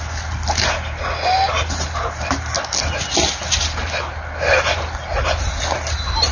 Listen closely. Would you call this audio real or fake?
real